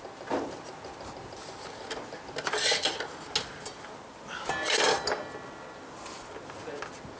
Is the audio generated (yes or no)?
no